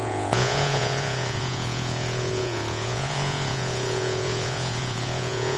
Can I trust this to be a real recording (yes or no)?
no